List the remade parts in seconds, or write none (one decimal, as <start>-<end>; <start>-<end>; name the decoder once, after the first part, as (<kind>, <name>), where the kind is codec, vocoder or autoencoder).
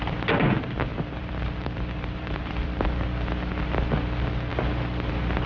0.9-2.7 (vocoder, BigVGAN v2)